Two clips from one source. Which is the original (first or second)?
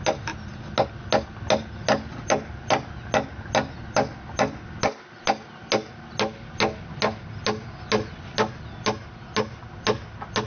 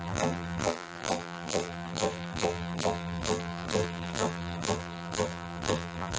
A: first